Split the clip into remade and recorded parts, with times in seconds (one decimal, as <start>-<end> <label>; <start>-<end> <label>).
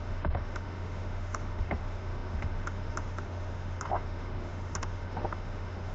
0.0-5.9 remade